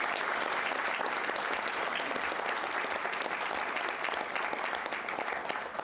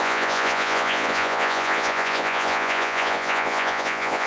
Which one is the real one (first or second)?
first